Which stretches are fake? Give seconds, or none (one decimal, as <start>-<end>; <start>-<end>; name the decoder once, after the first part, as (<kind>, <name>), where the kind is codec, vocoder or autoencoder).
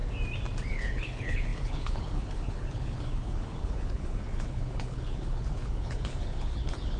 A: 0.7-7.0 (codec, HILCodec)